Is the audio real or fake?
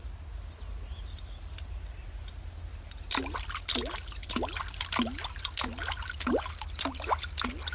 real